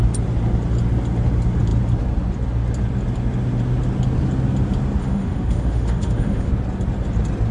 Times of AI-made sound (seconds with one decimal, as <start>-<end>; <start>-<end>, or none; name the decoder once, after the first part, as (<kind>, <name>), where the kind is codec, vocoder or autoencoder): 5.0-6.5 (autoencoder, DAC-VAE)

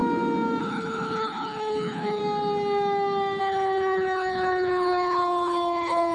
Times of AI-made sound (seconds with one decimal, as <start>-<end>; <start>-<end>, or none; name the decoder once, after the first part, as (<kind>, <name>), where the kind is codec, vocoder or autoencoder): 0.6-2.2 (codec, HILCodec); 3.4-6.1

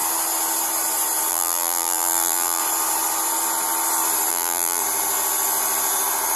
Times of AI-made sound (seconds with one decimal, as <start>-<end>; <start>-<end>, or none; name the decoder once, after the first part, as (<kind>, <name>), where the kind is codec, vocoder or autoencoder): 1.3-2.6 (vocoder, BigVGAN v2); 4.3-4.8

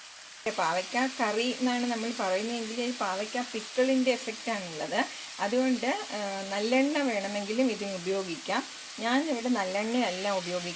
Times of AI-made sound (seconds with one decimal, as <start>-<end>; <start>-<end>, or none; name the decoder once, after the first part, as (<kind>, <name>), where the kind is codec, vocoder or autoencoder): none